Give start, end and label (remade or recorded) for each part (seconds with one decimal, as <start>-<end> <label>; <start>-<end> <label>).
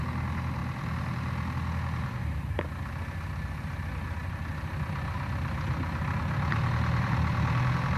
0.0-8.0 recorded